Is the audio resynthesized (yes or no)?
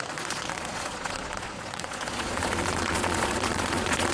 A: yes